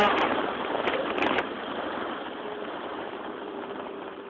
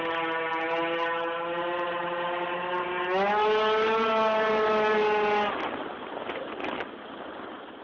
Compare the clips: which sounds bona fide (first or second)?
second